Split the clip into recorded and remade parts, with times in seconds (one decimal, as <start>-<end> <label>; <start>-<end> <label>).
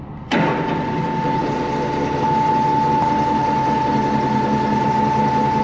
0.0-5.6 recorded